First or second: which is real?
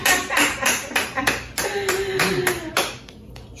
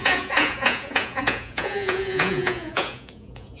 first